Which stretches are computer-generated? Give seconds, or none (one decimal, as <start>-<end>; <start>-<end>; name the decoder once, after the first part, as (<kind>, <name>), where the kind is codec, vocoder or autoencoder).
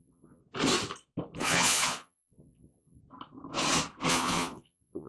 0.0-0.4 (vocoder, Vocos); 1.4-3.0; 4.1-5.1